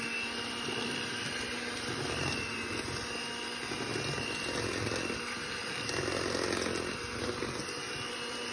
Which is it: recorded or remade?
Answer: recorded